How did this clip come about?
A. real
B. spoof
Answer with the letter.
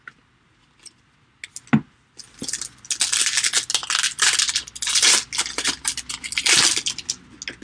A